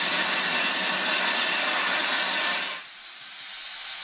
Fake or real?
real